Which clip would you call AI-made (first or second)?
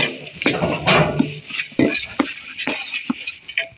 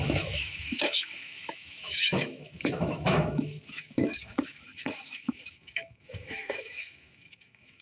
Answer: second